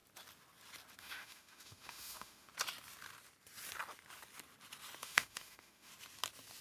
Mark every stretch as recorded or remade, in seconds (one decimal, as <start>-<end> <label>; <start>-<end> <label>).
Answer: 0.0-1.0 recorded; 1.0-2.5 remade; 2.5-5.0 recorded; 5.0-5.9 remade; 5.9-6.6 recorded